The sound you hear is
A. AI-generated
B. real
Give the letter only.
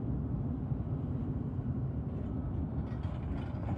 B